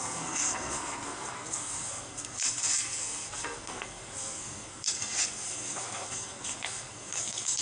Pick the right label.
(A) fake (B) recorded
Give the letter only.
A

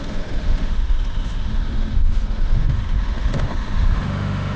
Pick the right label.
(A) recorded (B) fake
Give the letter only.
B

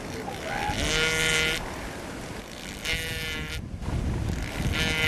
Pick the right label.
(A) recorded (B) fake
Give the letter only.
A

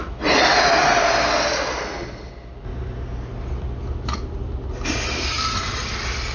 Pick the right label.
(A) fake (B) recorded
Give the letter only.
B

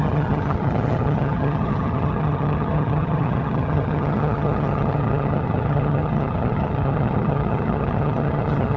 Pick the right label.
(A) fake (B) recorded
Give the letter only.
A